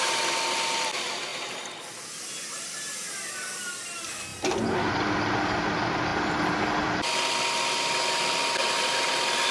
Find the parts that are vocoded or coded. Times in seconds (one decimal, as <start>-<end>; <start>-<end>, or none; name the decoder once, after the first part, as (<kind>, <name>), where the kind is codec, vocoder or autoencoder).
none